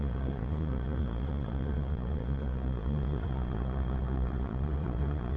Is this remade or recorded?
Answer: remade